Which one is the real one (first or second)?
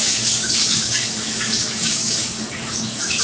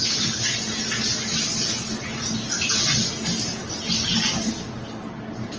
second